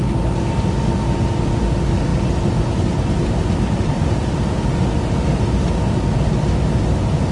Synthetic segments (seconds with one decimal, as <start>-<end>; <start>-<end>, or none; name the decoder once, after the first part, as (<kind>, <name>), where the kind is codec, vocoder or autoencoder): none

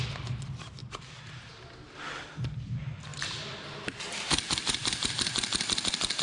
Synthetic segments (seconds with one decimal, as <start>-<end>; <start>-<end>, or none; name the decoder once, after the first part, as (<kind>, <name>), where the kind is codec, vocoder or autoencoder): 0.8-1.5 (vocoder, BigVGAN v2); 3.1-5.1

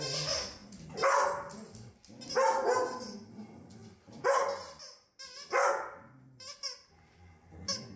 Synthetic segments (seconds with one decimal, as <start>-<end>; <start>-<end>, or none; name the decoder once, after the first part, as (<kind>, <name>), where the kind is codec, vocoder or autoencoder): none